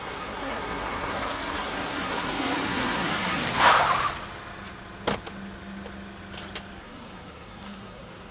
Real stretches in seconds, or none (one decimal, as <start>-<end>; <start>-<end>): 3.4-6.8